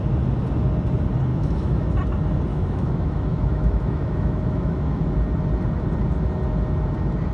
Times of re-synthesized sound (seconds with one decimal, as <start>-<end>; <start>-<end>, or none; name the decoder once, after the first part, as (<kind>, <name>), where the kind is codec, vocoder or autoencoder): 1.3-1.9 (autoencoder, DAC-VAE); 2.5-5.0